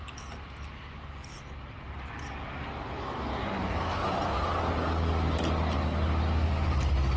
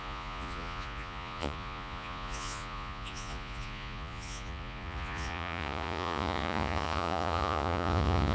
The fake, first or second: second